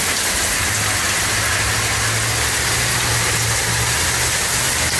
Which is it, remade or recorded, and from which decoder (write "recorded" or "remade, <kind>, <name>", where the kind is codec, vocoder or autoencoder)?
recorded